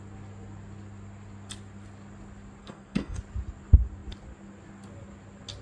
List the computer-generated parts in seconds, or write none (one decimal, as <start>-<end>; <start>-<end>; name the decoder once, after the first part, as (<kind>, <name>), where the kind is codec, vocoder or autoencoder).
2.6-3.2 (codec, SNAC)